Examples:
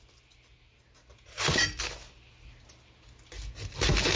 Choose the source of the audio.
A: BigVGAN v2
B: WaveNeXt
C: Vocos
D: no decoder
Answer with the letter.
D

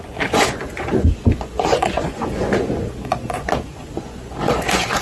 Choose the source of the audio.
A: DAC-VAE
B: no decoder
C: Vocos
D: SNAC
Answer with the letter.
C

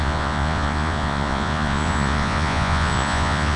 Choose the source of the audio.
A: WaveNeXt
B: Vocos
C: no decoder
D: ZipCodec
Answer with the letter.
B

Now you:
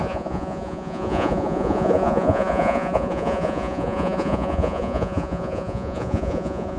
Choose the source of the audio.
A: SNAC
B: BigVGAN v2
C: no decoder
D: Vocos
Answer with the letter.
D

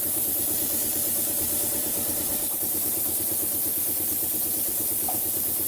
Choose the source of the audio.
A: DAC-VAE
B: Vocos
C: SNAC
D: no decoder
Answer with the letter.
D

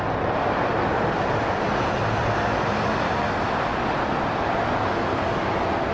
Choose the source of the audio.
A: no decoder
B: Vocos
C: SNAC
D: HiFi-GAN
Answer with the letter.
A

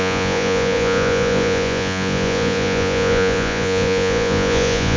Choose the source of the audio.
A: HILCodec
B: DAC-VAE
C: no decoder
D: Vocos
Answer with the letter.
D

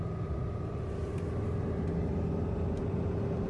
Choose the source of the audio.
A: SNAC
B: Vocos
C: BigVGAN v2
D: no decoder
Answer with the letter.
D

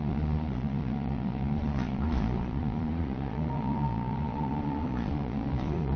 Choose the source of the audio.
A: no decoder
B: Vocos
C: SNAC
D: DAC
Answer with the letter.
B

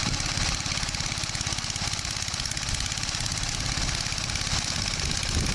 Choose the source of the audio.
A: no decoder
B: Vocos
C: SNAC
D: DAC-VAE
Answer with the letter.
A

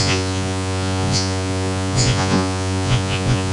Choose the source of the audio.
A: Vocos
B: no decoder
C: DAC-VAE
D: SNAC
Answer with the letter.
A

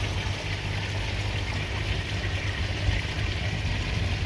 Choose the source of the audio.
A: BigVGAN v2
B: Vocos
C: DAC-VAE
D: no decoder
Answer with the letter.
D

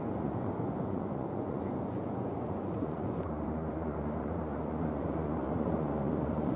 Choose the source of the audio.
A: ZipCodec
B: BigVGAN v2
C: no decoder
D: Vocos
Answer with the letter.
D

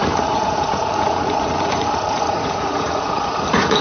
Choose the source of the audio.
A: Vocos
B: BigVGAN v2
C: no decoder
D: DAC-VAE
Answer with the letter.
A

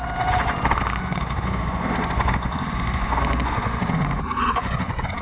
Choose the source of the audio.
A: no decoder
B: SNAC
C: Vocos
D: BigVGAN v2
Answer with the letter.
C